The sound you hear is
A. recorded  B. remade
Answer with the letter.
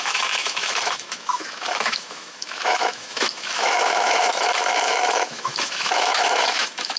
B